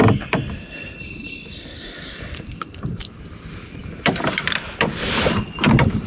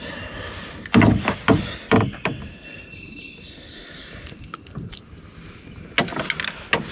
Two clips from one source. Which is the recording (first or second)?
second